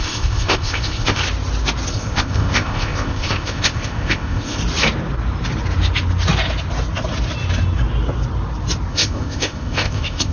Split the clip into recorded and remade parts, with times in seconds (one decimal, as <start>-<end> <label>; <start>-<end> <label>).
0.0-1.2 remade; 1.2-1.9 recorded; 1.9-4.6 remade; 4.6-8.9 recorded; 8.9-10.3 remade